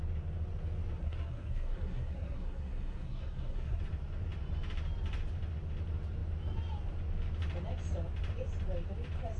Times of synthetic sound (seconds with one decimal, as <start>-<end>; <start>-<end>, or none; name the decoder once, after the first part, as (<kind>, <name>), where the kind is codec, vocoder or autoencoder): 1.0-3.8 (codec, SNAC)